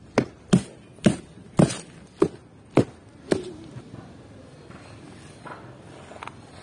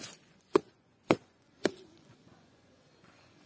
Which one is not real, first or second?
second